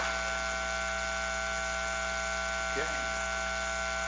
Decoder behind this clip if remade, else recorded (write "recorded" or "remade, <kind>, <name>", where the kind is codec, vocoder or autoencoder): recorded